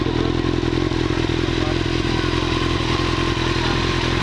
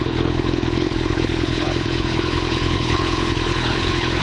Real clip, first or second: first